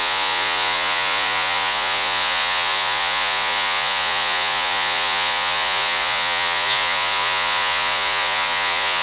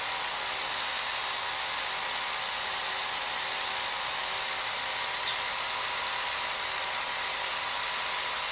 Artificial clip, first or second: first